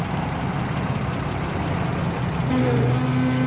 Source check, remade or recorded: recorded